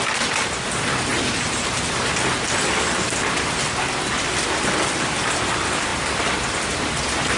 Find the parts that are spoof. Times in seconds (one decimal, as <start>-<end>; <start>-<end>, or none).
none